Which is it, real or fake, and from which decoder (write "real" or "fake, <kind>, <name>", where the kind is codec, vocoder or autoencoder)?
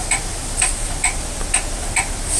real